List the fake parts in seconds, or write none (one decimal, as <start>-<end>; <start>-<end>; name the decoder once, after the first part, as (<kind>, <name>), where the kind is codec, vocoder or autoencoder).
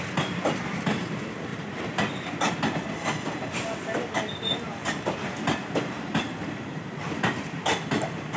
none